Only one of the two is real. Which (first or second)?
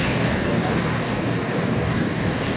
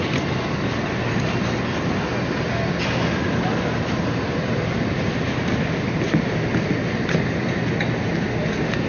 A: second